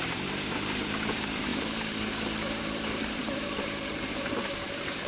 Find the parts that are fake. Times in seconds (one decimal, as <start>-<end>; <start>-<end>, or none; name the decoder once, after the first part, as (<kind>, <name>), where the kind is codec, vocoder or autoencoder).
0.0-5.1 (vocoder, BigVGAN v2)